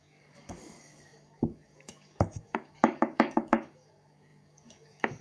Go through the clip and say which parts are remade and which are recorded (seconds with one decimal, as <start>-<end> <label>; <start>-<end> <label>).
0.0-5.2 remade